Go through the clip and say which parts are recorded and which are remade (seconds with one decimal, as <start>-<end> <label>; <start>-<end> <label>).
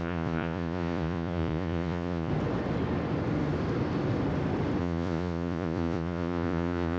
0.0-2.3 remade; 2.3-4.8 recorded; 4.8-7.0 remade